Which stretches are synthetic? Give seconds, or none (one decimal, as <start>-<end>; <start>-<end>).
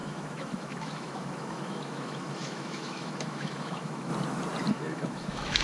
0.0-4.1; 4.7-5.6